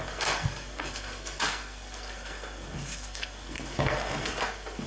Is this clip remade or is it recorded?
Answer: remade